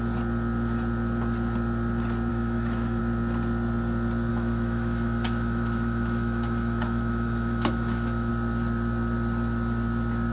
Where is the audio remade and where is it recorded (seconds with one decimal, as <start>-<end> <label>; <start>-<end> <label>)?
0.0-2.3 recorded; 2.3-3.0 remade; 3.0-4.3 recorded; 4.3-8.3 remade; 8.3-10.3 recorded